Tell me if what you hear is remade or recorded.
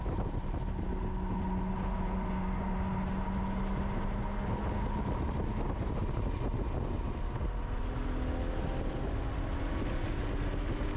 recorded